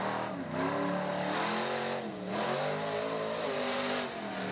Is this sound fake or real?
real